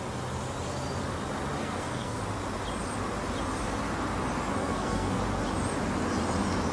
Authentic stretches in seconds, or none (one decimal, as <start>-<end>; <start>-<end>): 0.0-1.6; 2.2-4.6; 5.2-6.7